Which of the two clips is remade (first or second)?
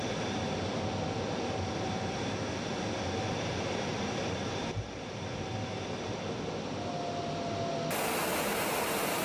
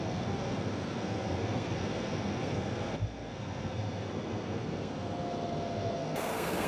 second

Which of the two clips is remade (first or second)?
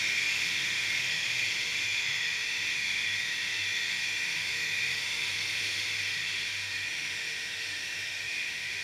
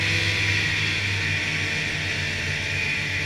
first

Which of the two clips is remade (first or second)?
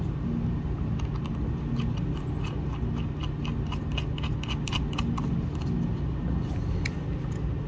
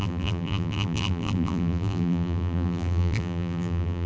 second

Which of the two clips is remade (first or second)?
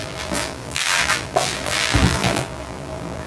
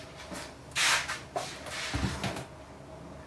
first